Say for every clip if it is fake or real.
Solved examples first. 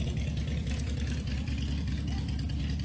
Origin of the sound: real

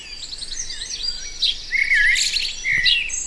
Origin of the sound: real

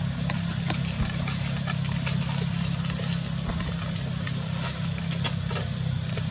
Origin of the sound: real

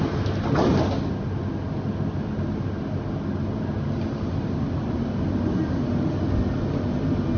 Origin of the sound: real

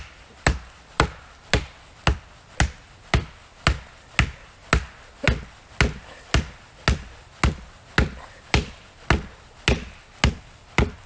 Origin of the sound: real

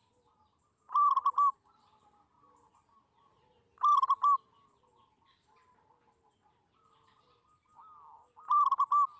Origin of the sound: real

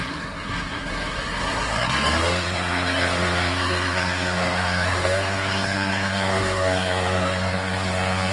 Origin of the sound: fake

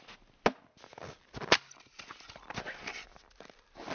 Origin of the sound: real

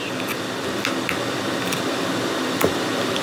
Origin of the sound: real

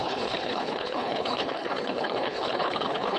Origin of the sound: fake